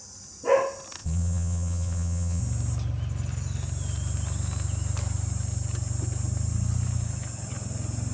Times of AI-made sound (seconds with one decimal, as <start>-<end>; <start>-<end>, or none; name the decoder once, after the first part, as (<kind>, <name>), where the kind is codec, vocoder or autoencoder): 1.0-2.4 (vocoder, Vocos)